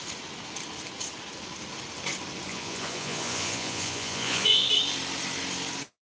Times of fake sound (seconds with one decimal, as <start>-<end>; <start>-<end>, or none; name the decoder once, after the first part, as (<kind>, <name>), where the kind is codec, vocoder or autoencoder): 2.5-4.7 (vocoder, Vocos)